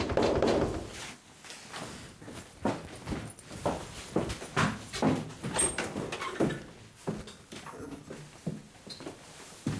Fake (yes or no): no